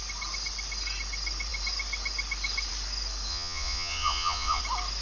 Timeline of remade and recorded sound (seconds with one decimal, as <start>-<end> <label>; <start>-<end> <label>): 0.0-3.3 recorded; 3.3-4.6 remade; 4.6-5.0 recorded